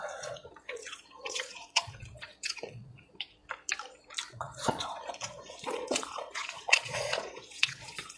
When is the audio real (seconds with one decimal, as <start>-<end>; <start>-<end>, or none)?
3.4-4.3